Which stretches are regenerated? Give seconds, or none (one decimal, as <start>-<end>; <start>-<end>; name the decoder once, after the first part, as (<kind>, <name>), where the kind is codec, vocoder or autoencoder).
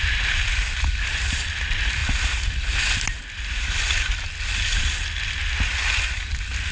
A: none